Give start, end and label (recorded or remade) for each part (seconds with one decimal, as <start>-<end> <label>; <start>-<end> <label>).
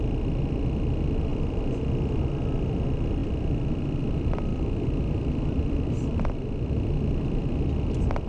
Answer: 0.0-1.3 recorded; 1.3-2.2 remade; 2.2-3.2 recorded; 3.2-4.0 remade; 4.0-4.5 recorded; 4.5-7.5 remade; 7.5-8.3 recorded